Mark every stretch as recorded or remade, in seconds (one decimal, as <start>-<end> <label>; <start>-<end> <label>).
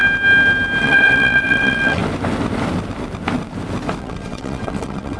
0.0-0.8 recorded; 0.8-2.0 remade; 2.0-4.0 recorded; 4.0-5.2 remade